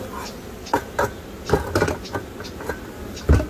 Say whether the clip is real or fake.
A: real